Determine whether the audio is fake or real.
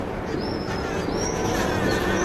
fake